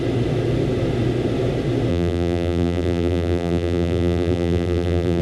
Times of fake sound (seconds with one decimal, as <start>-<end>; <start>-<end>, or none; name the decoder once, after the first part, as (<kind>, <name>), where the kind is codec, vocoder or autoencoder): 1.9-5.2 (vocoder, BigVGAN v2)